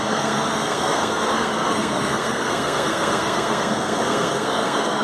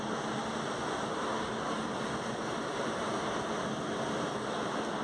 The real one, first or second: second